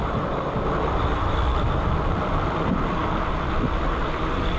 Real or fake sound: fake